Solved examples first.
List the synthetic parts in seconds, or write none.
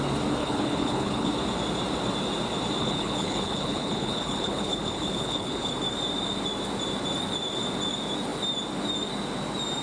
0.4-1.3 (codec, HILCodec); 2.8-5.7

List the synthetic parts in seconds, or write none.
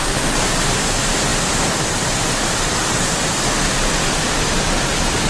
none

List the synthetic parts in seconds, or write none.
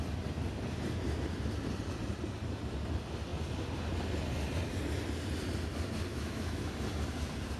6.1-6.8 (autoencoder, DAC-VAE)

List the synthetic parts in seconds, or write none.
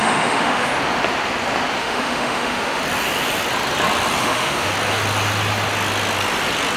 0.0-0.7 (autoencoder, DAC-VAE); 1.8-2.8; 4.2-4.7